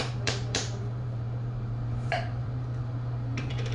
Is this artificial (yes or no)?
yes